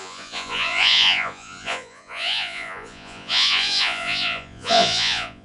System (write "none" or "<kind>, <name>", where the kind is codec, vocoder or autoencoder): vocoder, Vocos